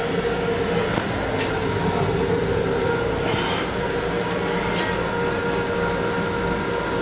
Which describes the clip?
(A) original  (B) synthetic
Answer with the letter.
A